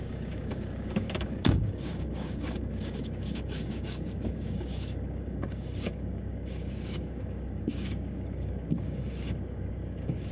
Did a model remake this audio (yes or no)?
yes